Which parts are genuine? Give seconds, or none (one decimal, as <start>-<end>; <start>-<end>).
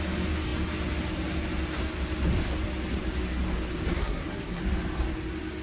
0.0-3.9; 4.6-5.6